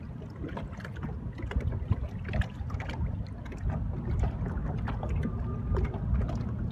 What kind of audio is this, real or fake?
real